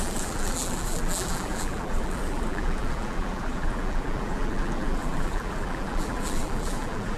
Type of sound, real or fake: fake